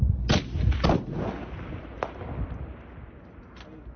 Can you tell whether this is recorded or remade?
recorded